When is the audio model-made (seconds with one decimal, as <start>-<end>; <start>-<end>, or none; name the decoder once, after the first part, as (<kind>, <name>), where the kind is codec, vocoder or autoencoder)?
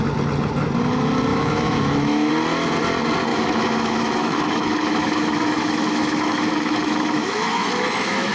1.3-2.3 (autoencoder, DAC-VAE); 3.3-8.3